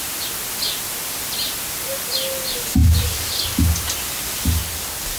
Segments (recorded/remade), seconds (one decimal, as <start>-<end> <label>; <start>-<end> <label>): 0.0-5.2 recorded